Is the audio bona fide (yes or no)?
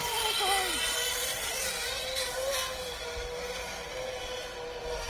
yes